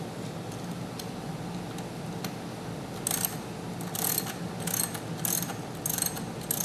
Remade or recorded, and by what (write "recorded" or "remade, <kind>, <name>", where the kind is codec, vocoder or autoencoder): recorded